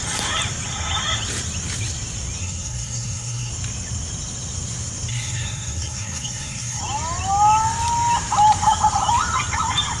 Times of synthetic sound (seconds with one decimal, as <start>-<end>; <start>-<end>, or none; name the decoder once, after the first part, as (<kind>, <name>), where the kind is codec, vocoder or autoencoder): 2.4-3.5 (codec, SNAC); 5.1-6.8